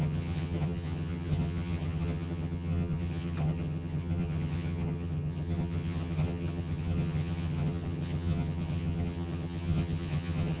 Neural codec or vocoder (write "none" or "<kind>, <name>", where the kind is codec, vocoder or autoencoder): vocoder, HiFi-GAN